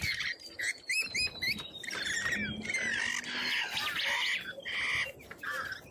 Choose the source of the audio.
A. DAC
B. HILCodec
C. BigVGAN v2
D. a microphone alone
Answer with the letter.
D